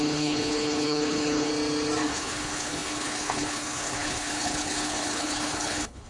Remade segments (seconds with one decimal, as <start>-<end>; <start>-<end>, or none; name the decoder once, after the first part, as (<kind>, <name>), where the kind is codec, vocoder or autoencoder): 0.0-1.5 (codec, HILCodec); 2.1-6.1